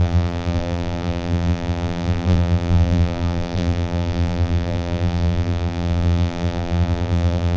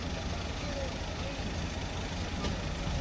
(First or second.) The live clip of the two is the second